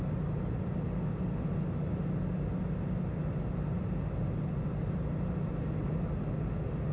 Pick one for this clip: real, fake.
real